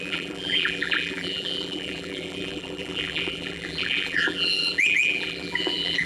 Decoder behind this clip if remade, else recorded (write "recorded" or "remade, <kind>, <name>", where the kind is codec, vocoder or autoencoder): remade, vocoder, BigVGAN v2